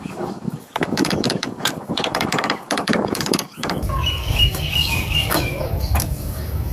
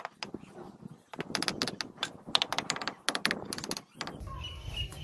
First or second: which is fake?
first